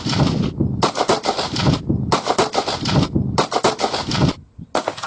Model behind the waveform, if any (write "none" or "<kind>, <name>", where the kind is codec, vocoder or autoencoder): none